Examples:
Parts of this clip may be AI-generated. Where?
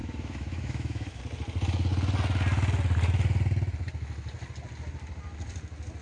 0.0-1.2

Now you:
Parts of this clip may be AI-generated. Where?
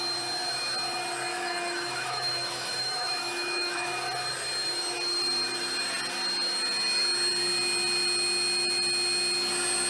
1.3-3.9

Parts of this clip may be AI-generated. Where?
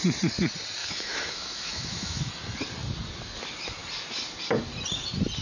0.8-2.3